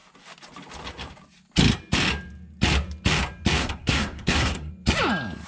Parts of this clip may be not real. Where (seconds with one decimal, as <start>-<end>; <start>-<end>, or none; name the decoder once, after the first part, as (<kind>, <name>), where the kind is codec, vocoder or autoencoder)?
3.6-4.7 (codec, SNAC)